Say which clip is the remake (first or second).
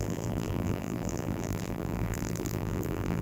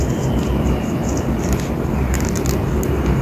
first